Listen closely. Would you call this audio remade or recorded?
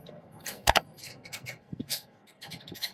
remade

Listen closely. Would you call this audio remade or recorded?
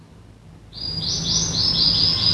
recorded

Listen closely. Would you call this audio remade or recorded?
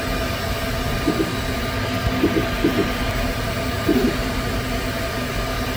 recorded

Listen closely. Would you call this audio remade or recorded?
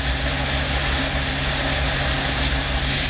recorded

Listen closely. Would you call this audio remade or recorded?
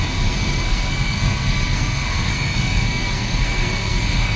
remade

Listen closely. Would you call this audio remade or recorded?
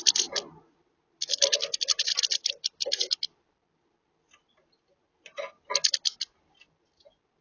recorded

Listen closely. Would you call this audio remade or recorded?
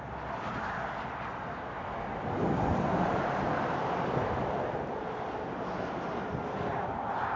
recorded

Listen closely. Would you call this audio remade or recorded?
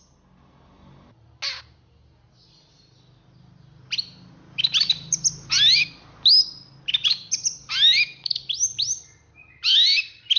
recorded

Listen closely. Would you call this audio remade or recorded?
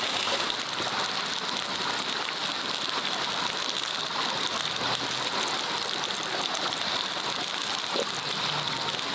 recorded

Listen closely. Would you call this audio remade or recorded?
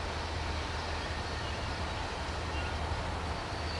recorded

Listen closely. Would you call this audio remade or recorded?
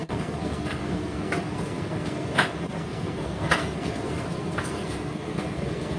remade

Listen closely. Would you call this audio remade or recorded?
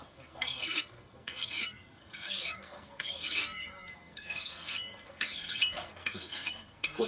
remade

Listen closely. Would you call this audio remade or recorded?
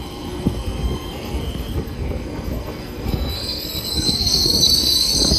remade